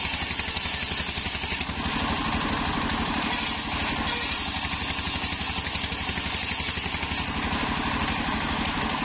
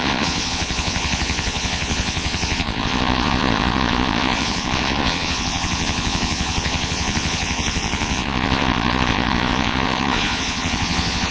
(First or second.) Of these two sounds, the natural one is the first